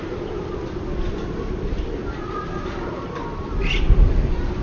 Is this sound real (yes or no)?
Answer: yes